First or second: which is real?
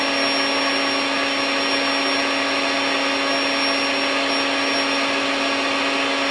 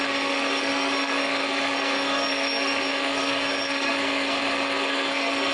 first